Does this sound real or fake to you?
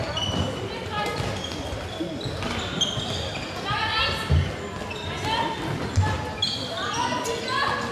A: real